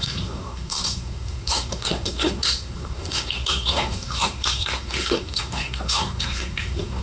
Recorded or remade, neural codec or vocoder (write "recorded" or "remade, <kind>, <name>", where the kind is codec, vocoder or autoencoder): remade, codec, SNAC